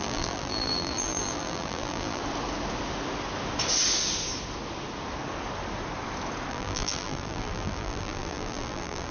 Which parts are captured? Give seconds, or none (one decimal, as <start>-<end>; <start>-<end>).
2.2-6.5